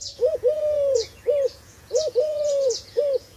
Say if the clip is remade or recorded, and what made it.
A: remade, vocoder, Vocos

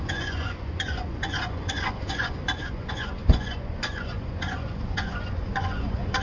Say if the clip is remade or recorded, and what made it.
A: remade, vocoder, Vocos